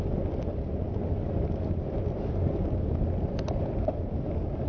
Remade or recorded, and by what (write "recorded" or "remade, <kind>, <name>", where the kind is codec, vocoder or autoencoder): recorded